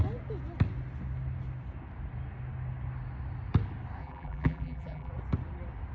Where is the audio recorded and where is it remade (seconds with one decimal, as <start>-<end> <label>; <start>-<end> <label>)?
0.0-4.0 recorded; 4.0-5.1 remade; 5.1-5.9 recorded